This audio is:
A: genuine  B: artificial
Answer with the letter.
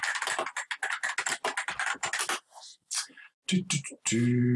A